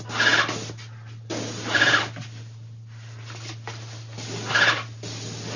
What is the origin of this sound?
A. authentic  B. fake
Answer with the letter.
A